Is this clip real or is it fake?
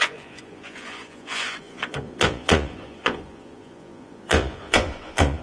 fake